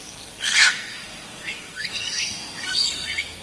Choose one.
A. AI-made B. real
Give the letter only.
A